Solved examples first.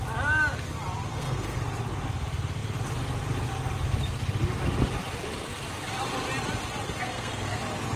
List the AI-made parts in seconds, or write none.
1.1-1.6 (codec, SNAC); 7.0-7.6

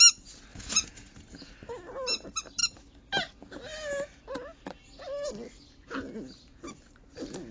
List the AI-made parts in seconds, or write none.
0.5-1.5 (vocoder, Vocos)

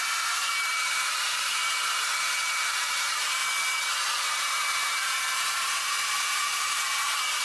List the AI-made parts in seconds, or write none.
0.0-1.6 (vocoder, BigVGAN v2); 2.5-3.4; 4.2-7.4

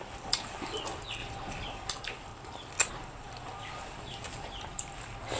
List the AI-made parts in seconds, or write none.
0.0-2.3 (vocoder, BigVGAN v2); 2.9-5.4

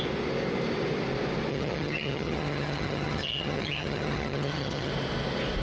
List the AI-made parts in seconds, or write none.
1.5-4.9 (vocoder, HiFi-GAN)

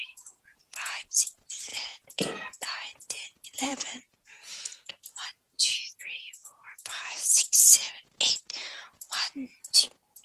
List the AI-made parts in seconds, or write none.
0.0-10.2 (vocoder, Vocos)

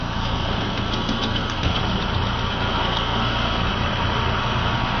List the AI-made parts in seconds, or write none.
0.0-1.8 (codec, SNAC); 2.5-3.7; 4.4-5.0